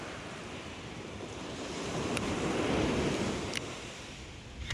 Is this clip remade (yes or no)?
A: yes